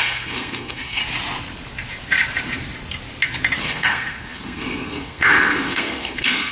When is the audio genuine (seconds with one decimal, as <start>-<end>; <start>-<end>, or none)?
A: 1.0-3.6